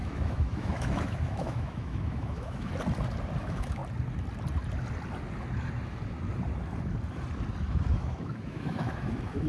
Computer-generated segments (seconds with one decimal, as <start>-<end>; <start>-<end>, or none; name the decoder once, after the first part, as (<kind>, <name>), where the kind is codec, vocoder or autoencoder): 0.0-2.7 (autoencoder, DAC-VAE); 3.4-3.8; 7.9-9.5